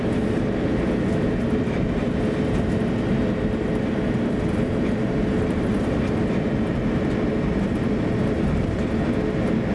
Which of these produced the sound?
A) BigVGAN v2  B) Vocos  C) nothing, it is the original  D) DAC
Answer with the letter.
C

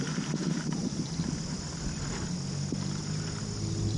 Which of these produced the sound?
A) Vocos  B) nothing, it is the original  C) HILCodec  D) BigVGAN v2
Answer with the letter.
B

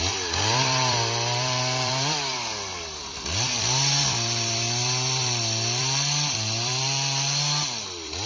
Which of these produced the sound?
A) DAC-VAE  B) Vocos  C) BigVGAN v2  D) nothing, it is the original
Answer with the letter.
C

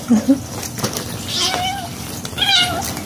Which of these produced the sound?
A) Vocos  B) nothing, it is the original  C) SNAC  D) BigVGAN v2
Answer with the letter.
B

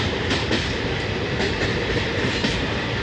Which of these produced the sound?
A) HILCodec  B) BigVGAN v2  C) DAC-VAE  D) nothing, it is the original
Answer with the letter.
B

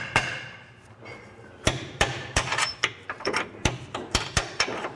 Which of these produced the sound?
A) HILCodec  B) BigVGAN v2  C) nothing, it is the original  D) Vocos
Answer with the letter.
B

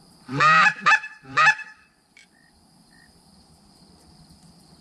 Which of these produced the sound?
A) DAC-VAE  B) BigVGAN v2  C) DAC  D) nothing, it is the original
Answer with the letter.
B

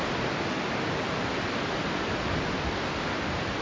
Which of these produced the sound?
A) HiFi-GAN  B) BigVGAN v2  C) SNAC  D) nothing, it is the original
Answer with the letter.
D